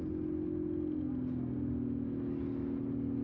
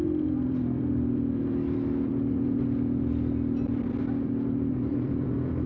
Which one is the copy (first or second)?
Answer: second